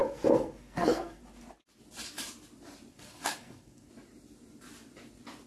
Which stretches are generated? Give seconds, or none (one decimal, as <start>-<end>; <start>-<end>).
0.0-1.2; 2.9-3.9